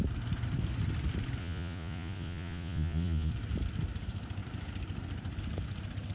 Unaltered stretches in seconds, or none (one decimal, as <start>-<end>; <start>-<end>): 0.0-1.4; 3.3-6.1